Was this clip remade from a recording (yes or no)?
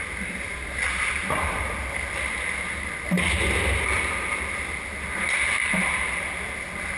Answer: no